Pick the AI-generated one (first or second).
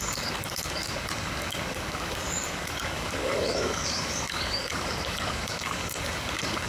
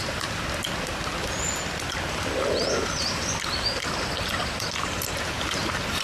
first